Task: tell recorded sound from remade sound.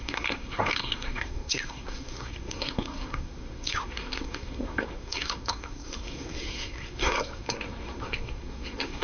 remade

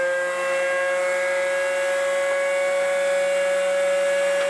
recorded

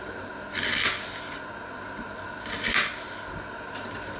recorded